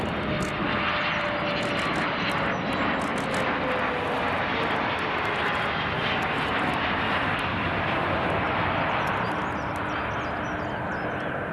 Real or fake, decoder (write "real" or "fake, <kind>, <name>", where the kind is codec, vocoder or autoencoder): real